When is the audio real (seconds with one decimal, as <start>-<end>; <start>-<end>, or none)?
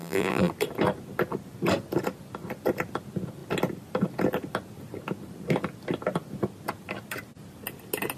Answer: 0.5-8.2